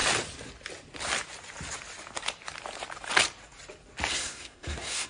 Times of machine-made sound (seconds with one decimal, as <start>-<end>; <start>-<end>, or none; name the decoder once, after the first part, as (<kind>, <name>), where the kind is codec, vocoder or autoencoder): 4.1-5.1 (codec, SNAC)